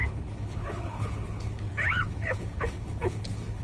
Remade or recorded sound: remade